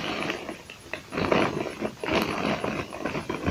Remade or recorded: recorded